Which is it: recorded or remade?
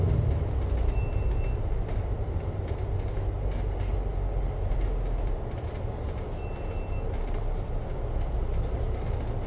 recorded